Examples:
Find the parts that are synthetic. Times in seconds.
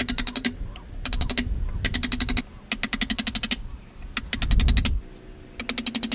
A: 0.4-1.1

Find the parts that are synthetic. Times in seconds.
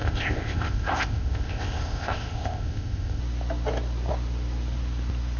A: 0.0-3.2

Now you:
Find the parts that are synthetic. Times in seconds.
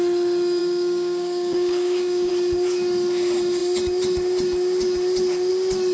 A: 0.6-2.3